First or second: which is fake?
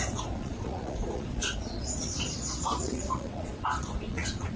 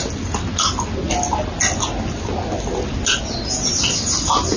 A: first